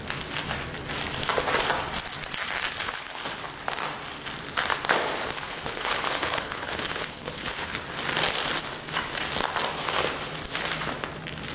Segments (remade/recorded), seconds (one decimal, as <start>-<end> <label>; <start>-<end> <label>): 0.0-2.8 recorded; 2.8-3.4 remade; 3.4-5.2 recorded; 5.2-7.8 remade; 7.8-11.5 recorded

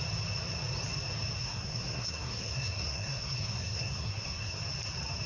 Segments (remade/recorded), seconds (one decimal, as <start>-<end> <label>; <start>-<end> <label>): 0.0-1.4 recorded; 1.4-4.6 remade; 4.6-5.3 recorded

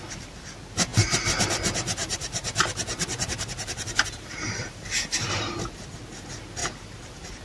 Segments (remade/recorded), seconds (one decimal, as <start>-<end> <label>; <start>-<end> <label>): 0.0-2.0 recorded; 2.0-6.0 remade; 6.0-6.6 recorded; 6.6-7.4 remade

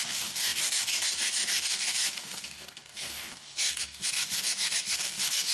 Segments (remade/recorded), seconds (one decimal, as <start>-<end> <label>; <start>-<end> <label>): 0.0-5.5 remade

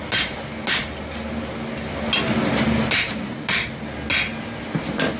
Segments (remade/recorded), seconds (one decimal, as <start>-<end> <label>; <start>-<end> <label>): 0.0-5.2 recorded

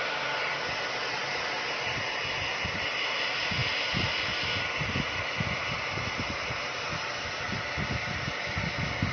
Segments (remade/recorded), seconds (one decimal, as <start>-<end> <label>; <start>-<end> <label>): 0.0-9.1 recorded

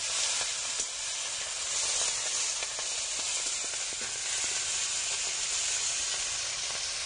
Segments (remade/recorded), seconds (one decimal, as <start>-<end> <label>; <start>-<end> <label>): 0.0-7.1 recorded

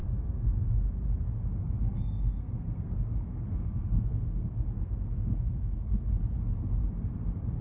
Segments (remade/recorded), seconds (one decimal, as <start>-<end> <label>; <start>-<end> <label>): 0.0-0.7 remade; 0.7-1.9 recorded; 1.9-6.1 remade; 6.1-7.6 recorded